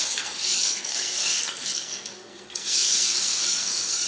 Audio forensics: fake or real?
fake